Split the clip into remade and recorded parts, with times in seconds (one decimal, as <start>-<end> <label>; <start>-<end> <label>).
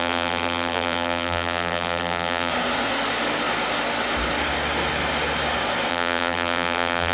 0.0-2.5 remade; 2.5-5.9 recorded; 5.9-7.1 remade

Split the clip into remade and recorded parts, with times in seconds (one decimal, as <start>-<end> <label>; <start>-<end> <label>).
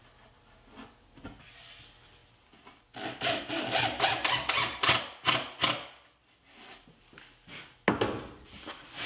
0.0-9.1 recorded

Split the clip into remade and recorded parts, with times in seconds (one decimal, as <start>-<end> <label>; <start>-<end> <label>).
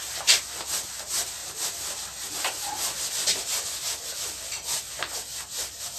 0.0-1.4 recorded; 1.4-4.8 remade; 4.8-5.3 recorded; 5.3-6.0 remade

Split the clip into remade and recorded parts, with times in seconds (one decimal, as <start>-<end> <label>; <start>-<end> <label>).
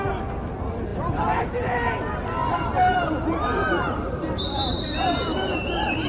0.0-2.4 recorded; 2.4-6.1 remade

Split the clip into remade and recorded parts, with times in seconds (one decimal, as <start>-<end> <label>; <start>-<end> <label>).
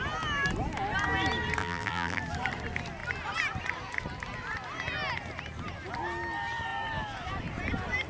0.0-1.6 recorded; 1.6-2.2 remade; 2.2-8.1 recorded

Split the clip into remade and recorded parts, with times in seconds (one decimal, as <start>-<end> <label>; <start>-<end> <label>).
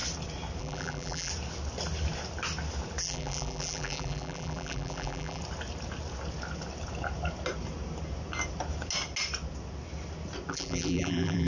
0.0-0.6 recorded; 0.6-1.3 remade; 1.3-3.0 recorded; 3.0-5.4 remade; 5.4-10.5 recorded; 10.5-11.5 remade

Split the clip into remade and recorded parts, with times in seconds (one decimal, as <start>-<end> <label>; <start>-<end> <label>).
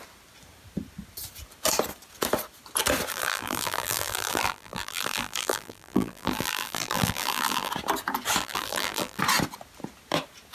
0.0-3.1 recorded; 3.1-7.7 remade; 7.7-8.4 recorded; 8.4-9.2 remade; 9.2-10.5 recorded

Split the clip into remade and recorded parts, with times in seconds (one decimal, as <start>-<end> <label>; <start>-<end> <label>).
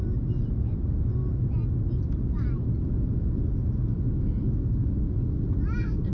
0.0-6.1 recorded